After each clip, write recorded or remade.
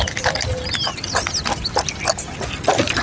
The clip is recorded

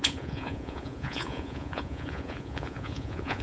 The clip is remade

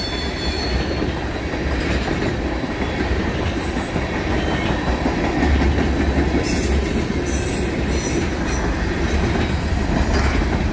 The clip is recorded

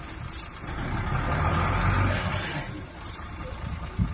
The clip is recorded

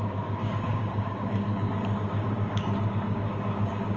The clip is remade